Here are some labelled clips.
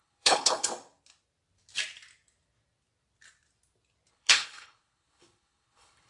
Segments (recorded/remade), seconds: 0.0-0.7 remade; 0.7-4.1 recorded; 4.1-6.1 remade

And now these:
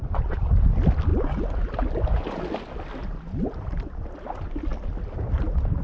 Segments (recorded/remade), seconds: 0.0-5.8 recorded

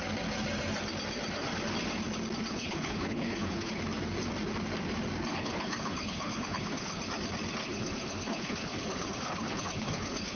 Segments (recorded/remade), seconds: 0.0-2.5 recorded; 2.5-3.8 remade; 3.8-5.3 recorded; 5.3-7.0 remade; 7.0-7.6 recorded; 7.6-10.4 remade

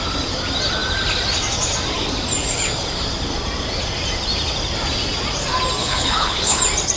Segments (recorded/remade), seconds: 0.0-5.8 recorded; 5.8-6.6 remade; 6.6-7.0 recorded